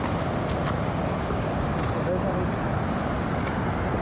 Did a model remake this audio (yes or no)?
no